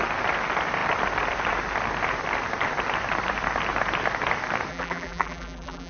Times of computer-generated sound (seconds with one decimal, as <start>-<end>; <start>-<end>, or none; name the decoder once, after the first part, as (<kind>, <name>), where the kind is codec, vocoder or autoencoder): 4.7-5.9 (vocoder, BigVGAN v2)